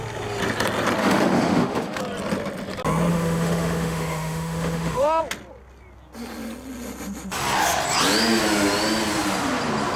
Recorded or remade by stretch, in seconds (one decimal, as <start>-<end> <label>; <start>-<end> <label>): 0.0-1.0 recorded; 1.0-2.0 remade; 2.0-3.1 recorded; 3.1-5.2 remade; 5.2-10.0 recorded